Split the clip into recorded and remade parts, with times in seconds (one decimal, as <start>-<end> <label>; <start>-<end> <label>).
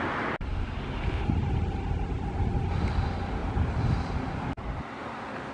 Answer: 0.0-3.4 recorded; 3.4-4.3 remade; 4.3-5.5 recorded